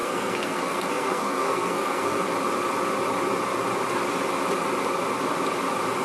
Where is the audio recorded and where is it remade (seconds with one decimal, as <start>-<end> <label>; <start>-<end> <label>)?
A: 0.0-2.3 remade; 2.3-6.0 recorded

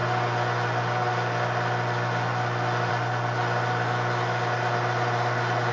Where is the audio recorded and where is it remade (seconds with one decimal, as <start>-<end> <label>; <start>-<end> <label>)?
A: 0.0-5.7 recorded

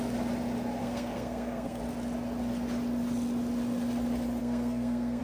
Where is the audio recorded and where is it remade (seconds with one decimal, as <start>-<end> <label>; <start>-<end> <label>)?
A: 0.0-0.8 recorded; 0.8-1.8 remade; 1.8-4.4 recorded; 4.4-5.2 remade